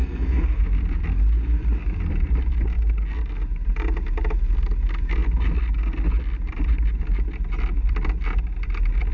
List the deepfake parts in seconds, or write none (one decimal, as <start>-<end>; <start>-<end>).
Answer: 0.0-0.6